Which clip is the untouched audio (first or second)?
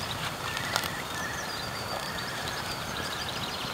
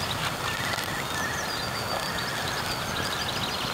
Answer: second